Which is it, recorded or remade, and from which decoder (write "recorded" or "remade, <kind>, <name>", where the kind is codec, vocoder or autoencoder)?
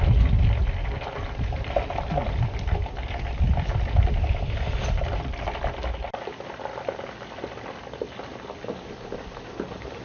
recorded